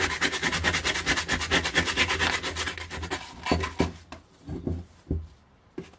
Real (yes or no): yes